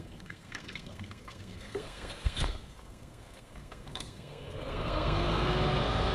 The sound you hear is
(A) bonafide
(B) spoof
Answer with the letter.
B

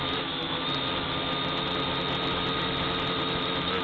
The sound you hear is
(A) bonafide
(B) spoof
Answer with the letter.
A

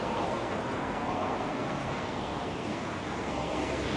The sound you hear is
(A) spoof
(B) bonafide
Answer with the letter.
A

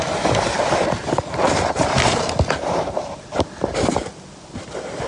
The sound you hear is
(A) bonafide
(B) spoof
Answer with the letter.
A